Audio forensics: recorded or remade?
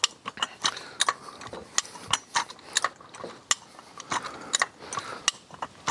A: recorded